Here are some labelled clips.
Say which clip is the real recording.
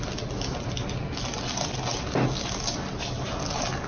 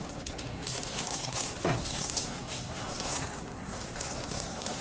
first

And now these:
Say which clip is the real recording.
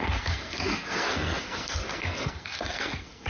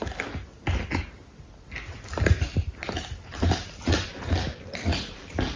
second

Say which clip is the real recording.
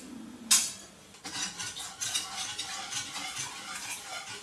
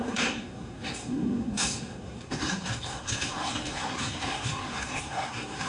first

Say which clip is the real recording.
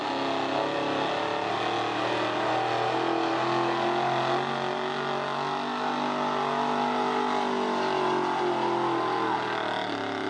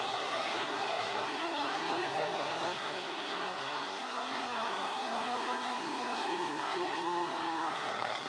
first